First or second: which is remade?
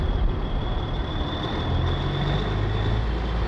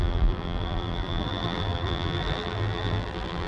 second